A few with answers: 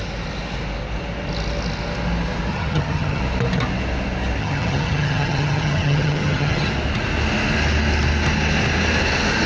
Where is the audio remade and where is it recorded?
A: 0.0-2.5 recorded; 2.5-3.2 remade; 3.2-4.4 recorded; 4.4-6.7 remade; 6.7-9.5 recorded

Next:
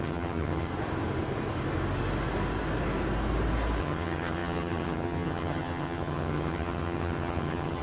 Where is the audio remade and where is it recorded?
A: 0.0-0.7 remade; 0.7-3.8 recorded; 3.8-7.8 remade

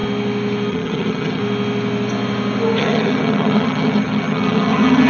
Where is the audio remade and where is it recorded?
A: 0.0-0.7 recorded; 0.7-1.4 remade; 1.4-2.8 recorded; 2.8-5.1 remade

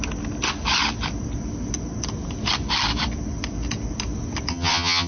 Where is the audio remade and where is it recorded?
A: 0.0-4.5 recorded; 4.5-5.1 remade

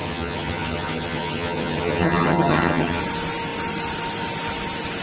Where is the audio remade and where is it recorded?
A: 0.0-3.0 remade; 3.0-5.0 recorded

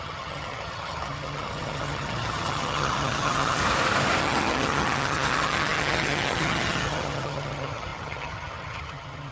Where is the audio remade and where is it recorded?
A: 0.0-3.6 remade; 3.6-4.2 recorded; 4.2-9.3 remade

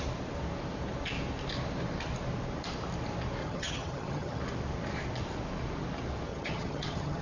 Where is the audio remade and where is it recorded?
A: 0.0-3.4 recorded; 3.4-4.4 remade; 4.4-6.3 recorded; 6.3-7.2 remade

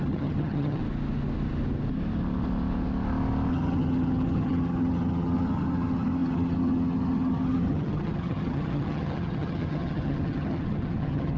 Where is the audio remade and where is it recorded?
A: 0.0-0.8 remade; 0.8-3.5 recorded; 3.5-11.4 remade